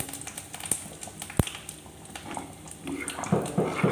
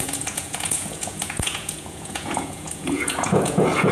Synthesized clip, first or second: second